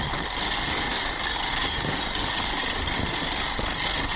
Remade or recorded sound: recorded